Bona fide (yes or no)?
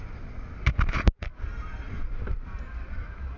yes